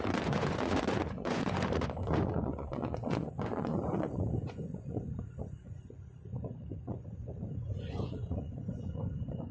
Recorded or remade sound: remade